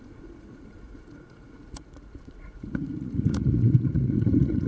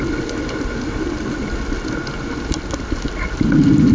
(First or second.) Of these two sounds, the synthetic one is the first